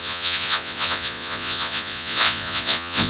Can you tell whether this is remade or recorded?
remade